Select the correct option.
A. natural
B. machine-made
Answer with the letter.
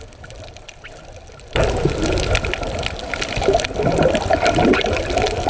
A